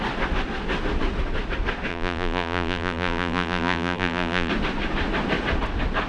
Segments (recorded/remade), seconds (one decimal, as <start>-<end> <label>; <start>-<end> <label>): 0.0-1.9 recorded; 1.9-4.5 remade; 4.5-6.1 recorded